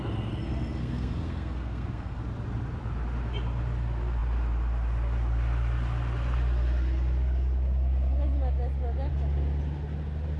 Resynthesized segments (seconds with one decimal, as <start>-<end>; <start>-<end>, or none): 0.8-2.2